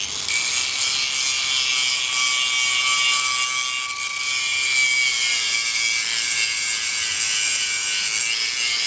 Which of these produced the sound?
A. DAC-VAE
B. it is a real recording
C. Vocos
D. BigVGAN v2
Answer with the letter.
B